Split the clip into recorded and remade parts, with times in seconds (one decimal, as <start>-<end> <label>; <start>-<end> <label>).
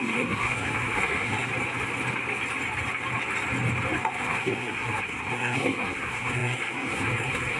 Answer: 0.0-1.5 remade; 1.5-4.0 recorded; 4.0-7.6 remade